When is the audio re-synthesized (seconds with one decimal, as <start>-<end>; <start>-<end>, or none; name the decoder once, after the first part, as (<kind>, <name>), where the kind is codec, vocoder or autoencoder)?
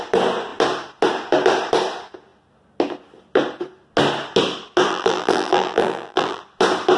4.9-6.4 (vocoder, BigVGAN v2)